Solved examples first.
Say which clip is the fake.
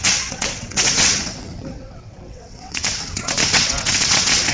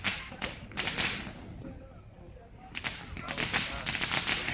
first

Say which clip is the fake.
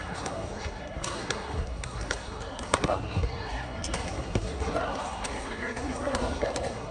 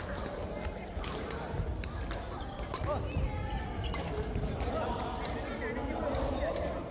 first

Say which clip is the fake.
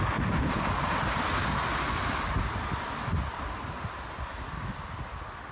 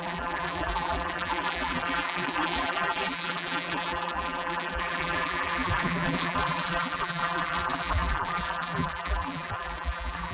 second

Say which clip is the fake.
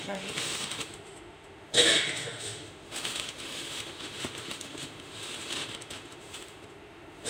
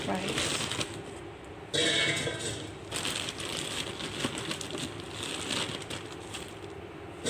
first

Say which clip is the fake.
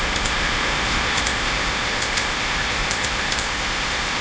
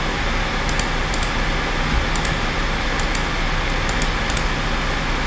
first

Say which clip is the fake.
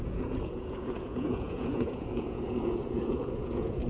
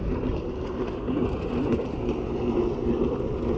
first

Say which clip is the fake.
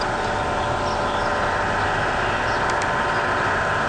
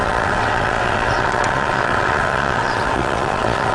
second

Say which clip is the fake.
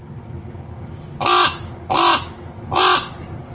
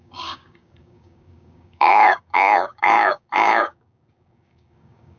second